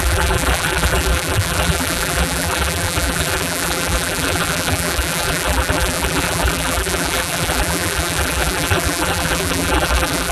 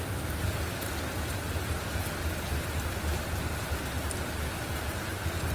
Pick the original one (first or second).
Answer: second